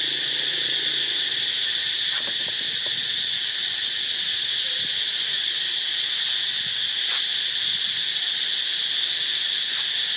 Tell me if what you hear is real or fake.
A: real